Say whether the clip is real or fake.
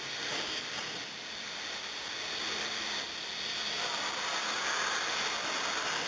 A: real